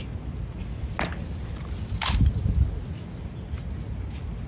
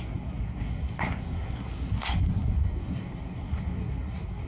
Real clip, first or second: first